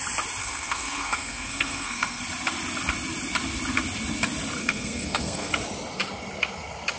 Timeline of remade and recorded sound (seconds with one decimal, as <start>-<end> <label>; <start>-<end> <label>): 0.0-0.4 recorded; 0.4-2.2 remade; 2.2-4.6 recorded; 4.6-5.5 remade; 5.5-7.0 recorded